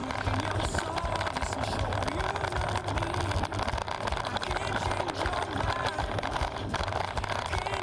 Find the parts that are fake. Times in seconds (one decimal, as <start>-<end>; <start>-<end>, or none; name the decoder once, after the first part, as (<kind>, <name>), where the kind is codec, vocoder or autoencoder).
none

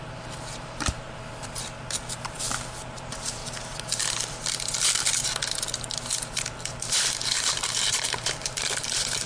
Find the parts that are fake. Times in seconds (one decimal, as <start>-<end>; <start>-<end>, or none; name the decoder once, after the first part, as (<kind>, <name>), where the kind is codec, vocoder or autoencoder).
0.0-3.4 (vocoder, BigVGAN v2); 6.6-9.3